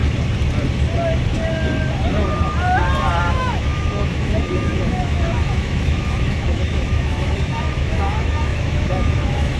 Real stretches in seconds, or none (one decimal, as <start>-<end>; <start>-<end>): 0.0-3.3